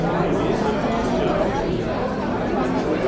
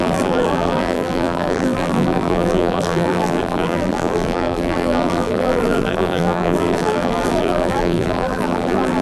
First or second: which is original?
first